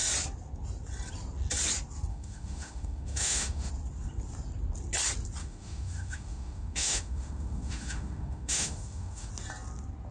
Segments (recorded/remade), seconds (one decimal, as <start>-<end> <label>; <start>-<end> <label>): 0.0-2.1 recorded; 2.1-3.7 remade; 3.7-5.4 recorded; 5.4-9.3 remade; 9.3-10.1 recorded